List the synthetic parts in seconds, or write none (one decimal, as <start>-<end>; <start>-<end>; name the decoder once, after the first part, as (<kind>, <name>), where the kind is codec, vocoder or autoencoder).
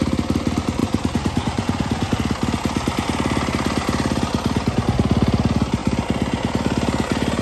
0.8-2.2 (vocoder, Vocos)